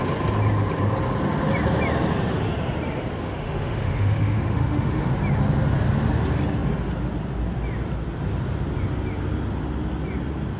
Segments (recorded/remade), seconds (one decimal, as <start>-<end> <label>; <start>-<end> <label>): 0.0-3.2 recorded; 3.2-5.1 remade; 5.1-10.6 recorded